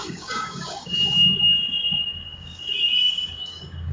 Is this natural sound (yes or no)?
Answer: no